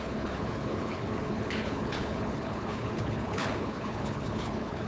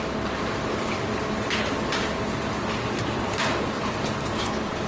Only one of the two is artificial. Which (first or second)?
first